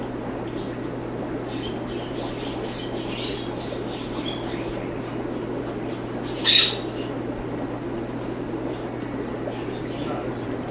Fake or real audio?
real